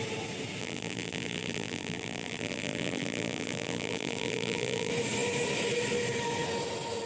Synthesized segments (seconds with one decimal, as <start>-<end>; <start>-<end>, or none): 0.6-4.9